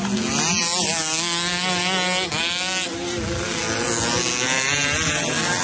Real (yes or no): yes